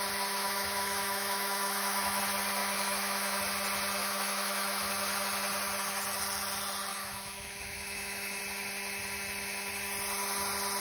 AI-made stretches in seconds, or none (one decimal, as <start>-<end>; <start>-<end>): 0.4-2.2; 2.6-3.4; 4.0-4.9; 6.9-8.4